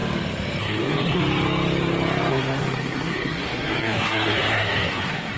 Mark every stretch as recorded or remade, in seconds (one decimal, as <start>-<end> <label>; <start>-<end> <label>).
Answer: 0.0-0.6 recorded; 0.6-1.2 remade; 1.2-2.3 recorded; 2.3-5.4 remade